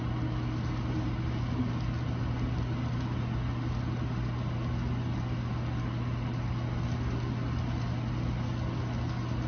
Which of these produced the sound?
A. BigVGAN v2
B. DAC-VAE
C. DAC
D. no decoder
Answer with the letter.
D